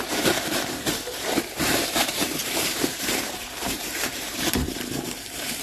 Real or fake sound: fake